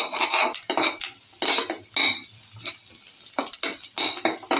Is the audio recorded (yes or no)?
yes